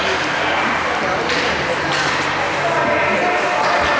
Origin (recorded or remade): recorded